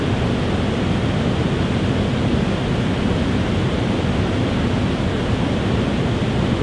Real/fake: real